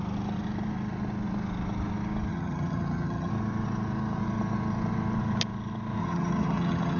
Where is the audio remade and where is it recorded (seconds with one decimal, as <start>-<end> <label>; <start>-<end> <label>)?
0.0-2.3 recorded; 2.3-3.3 remade; 3.3-6.0 recorded; 6.0-7.0 remade